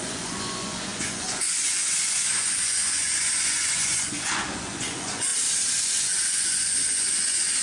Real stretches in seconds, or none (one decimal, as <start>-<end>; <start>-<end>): 5.3-5.8